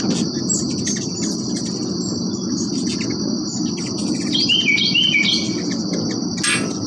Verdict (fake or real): real